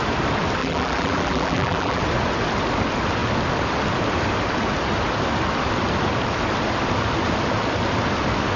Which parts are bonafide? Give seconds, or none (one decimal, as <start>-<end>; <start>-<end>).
0.0-0.6; 2.0-8.6